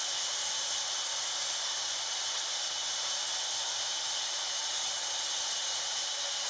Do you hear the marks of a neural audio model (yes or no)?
no